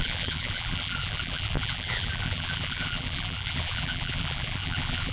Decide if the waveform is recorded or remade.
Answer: remade